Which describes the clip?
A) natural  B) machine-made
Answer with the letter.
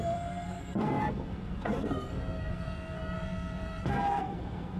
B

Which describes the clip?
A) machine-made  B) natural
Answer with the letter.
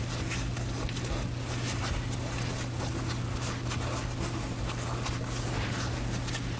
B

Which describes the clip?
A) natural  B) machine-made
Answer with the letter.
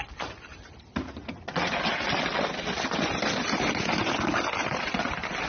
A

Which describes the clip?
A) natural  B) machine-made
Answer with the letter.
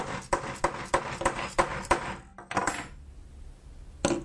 A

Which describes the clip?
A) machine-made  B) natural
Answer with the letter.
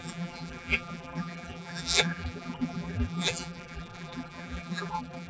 A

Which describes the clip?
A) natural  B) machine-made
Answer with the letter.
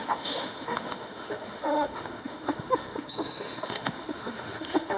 B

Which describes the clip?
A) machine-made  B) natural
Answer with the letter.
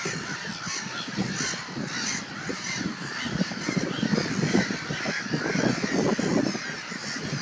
B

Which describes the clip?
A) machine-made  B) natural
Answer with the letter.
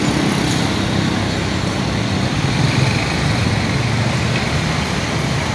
B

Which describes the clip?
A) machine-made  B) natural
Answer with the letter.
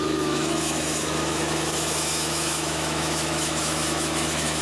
A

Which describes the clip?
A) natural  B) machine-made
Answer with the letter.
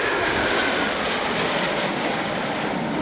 A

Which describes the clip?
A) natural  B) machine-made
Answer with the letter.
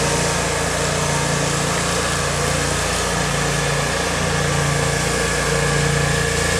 A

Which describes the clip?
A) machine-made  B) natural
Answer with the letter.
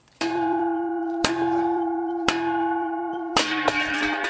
A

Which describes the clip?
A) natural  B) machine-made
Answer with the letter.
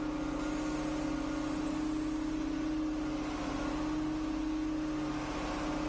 A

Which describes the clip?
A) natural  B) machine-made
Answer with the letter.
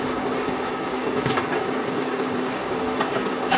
B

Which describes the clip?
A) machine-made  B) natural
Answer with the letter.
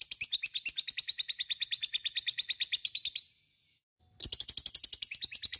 B